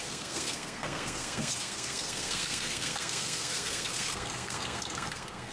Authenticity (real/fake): fake